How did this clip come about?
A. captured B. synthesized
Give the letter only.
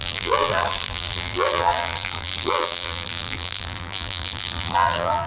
B